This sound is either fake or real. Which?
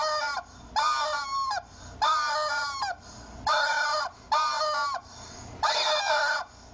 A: real